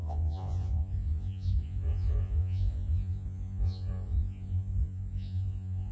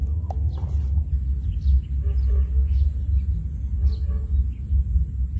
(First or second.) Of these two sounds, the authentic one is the second